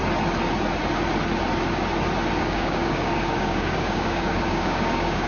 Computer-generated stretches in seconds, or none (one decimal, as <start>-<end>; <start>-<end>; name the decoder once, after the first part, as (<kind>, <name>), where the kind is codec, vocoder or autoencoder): 2.4-5.3 (codec, DAC)